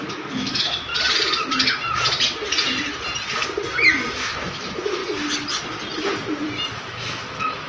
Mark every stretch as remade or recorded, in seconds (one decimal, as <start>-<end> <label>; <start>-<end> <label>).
0.0-0.9 remade; 0.9-4.1 recorded; 4.1-5.0 remade; 5.0-6.7 recorded; 6.7-7.7 remade

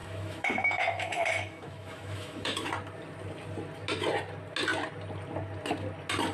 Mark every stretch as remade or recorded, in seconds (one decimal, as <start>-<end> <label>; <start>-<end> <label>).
0.0-2.7 remade; 2.7-6.3 recorded

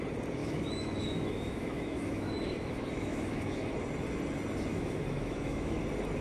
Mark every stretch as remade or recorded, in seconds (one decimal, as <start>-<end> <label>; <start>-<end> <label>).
0.0-0.4 recorded; 0.4-3.7 remade; 3.7-4.7 recorded; 4.7-5.8 remade; 5.8-6.2 recorded